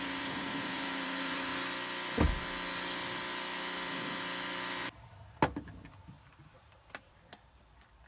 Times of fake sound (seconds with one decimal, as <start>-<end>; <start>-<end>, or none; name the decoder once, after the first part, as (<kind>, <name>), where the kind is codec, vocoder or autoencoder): 0.0-1.5 (vocoder, BigVGAN v2); 6.4-8.1